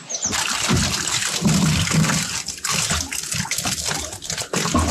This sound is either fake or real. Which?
real